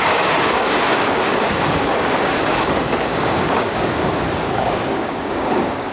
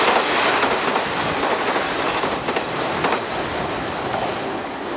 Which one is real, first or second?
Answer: second